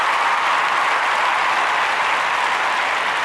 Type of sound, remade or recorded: recorded